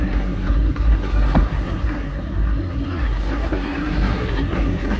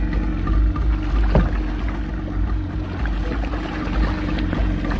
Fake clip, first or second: first